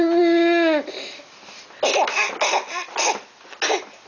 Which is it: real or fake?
real